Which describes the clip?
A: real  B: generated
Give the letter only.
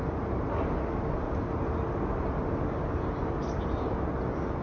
A